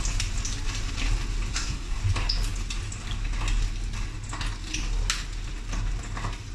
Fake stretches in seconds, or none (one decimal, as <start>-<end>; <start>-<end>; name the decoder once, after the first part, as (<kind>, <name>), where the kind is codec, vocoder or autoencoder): 1.5-2.0 (codec, SNAC)